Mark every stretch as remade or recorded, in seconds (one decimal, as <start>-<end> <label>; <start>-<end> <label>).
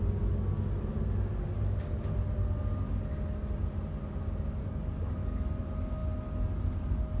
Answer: 0.0-4.6 recorded; 4.6-5.6 remade; 5.6-7.2 recorded